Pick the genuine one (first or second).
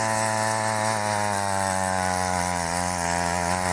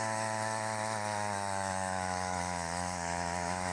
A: first